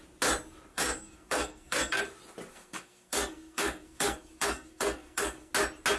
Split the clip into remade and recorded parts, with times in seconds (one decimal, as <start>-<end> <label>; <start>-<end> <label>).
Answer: 0.0-0.7 recorded; 0.7-2.0 remade; 2.0-2.5 recorded; 2.5-5.5 remade; 5.5-6.0 recorded